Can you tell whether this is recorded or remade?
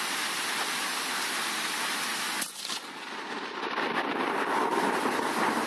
recorded